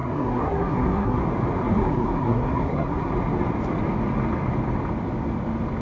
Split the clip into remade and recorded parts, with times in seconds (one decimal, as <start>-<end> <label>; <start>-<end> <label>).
0.0-1.2 remade; 1.2-1.6 recorded; 1.6-3.1 remade; 3.1-5.8 recorded